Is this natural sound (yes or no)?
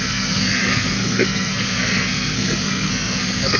no